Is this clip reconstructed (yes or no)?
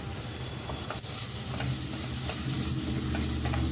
no